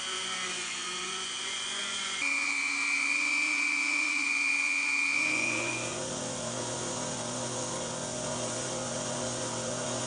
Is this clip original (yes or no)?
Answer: no